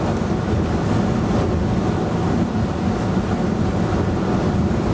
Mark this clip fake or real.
real